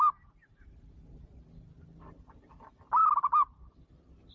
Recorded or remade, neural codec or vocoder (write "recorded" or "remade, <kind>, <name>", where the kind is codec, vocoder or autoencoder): recorded